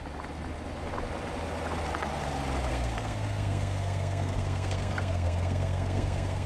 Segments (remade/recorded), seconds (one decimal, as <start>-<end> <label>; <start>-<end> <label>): 0.0-2.7 recorded; 2.7-6.5 remade